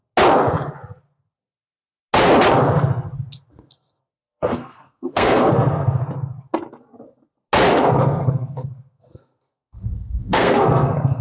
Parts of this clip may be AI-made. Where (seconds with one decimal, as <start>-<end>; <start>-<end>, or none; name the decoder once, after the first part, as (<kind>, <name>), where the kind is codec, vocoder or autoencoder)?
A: 3.5-6.0 (codec, SNAC); 7.7-11.2